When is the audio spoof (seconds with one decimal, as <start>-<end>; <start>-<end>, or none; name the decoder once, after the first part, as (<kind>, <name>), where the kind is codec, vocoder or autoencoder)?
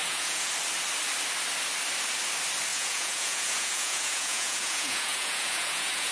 0.0-0.5 (vocoder, Vocos); 2.7-6.1